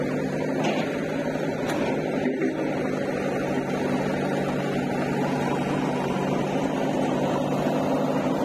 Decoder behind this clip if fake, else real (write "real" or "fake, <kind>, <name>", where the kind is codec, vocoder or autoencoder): real